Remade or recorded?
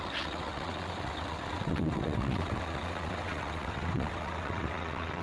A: remade